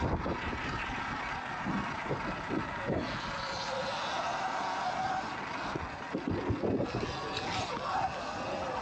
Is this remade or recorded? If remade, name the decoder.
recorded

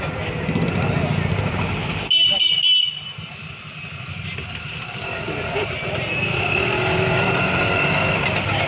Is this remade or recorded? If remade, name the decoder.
recorded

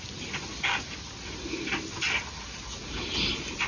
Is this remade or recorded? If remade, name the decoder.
recorded